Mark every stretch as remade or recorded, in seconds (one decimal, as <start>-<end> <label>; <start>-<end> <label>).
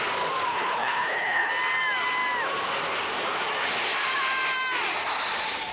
0.0-0.5 recorded; 0.5-1.5 remade; 1.5-5.7 recorded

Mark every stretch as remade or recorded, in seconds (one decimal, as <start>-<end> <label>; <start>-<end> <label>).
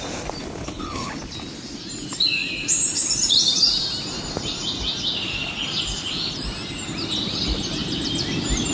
0.0-0.4 recorded; 0.4-1.1 remade; 1.1-8.7 recorded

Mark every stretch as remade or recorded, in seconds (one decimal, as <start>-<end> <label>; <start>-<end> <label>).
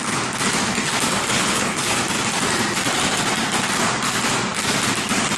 0.0-1.3 recorded; 1.3-1.8 remade; 1.8-5.4 recorded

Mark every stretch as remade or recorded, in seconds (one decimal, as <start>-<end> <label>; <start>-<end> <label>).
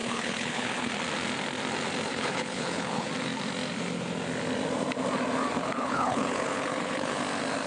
0.0-0.9 remade; 0.9-2.1 recorded; 2.1-3.1 remade; 3.1-5.6 recorded; 5.6-7.2 remade; 7.2-7.7 recorded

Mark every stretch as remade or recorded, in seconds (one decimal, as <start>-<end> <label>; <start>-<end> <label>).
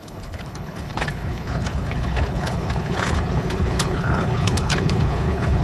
0.0-5.6 remade